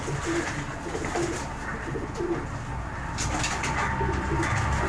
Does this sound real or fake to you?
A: real